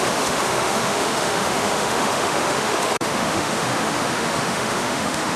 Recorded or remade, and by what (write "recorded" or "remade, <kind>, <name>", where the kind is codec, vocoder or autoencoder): remade, autoencoder, DAC-VAE